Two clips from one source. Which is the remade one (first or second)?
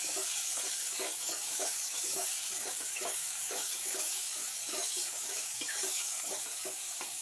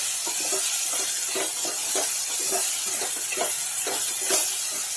first